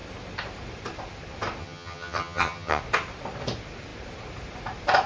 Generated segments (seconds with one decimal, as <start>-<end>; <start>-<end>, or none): 1.6-2.8